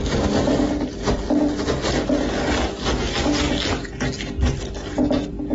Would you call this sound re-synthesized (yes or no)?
no